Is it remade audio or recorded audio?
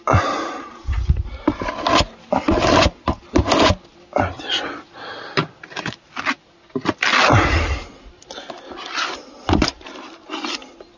recorded